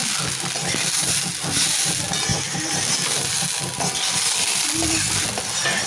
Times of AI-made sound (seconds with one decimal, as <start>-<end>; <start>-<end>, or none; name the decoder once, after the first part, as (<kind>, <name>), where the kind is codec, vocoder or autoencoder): none